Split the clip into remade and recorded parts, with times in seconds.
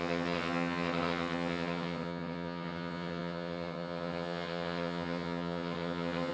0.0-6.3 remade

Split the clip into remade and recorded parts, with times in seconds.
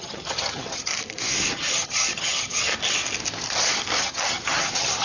0.0-0.9 remade; 0.9-1.5 recorded; 1.5-2.7 remade; 2.7-4.0 recorded; 4.0-5.0 remade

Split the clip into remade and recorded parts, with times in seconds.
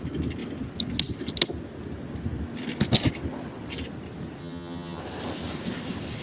0.0-4.4 recorded; 4.4-5.0 remade; 5.0-6.2 recorded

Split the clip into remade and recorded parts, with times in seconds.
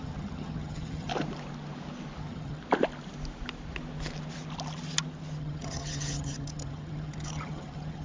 0.0-1.1 remade; 1.1-2.2 recorded; 2.2-2.6 remade; 2.6-5.4 recorded; 5.4-8.0 remade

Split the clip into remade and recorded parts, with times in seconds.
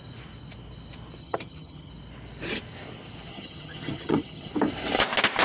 0.0-1.2 recorded; 1.2-1.9 remade; 1.9-3.3 recorded; 3.3-4.5 remade; 4.5-5.4 recorded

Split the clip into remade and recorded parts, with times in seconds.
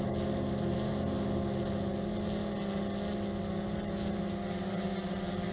0.0-5.5 recorded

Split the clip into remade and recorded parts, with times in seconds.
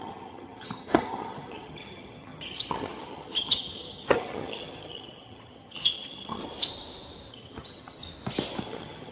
0.0-6.4 remade; 6.4-7.3 recorded; 7.3-8.0 remade; 8.0-8.6 recorded; 8.6-9.1 remade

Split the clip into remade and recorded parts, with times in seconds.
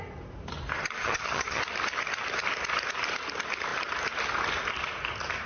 0.0-1.0 recorded; 1.0-1.6 remade; 1.6-5.5 recorded